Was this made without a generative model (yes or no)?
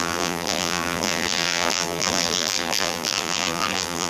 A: no